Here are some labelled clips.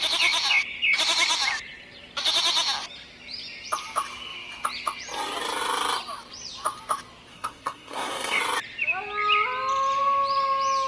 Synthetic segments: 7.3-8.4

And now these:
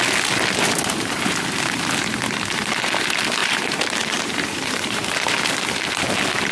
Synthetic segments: 3.4-5.5

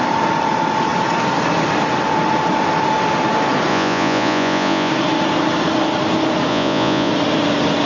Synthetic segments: 3.7-4.9; 6.5-7.1

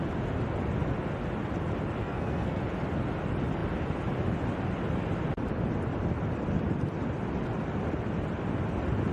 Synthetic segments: 2.0-2.6